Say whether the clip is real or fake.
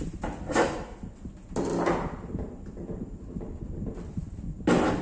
real